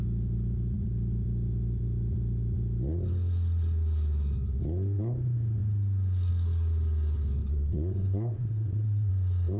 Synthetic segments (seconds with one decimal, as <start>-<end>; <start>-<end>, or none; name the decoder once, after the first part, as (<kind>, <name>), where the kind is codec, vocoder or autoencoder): 7.4-9.1 (vocoder, WaveNeXt)